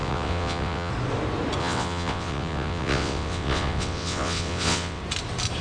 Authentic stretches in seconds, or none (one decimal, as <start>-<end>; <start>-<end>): 0.9-1.6; 5.0-5.6

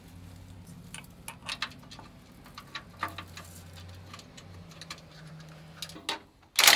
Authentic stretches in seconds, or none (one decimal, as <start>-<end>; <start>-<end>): 0.0-6.8

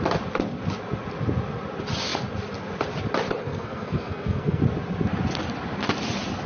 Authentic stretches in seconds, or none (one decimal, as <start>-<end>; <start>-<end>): 0.0-3.4; 4.6-6.5

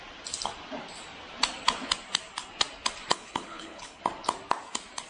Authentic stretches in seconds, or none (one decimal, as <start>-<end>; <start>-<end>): 0.0-3.1; 4.0-5.1

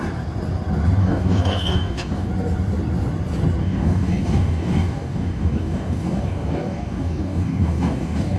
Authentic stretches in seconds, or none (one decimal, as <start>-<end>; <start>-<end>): 0.0-1.0; 2.3-3.6

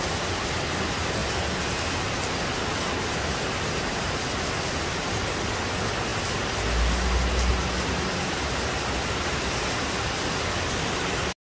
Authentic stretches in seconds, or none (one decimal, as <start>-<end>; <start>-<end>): 0.0-11.4